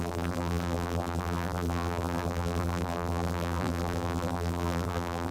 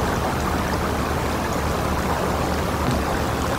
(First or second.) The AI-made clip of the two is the first